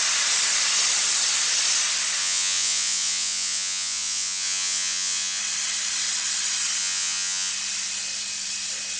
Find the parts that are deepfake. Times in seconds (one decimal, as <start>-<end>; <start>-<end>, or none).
2.2-5.4; 6.8-7.5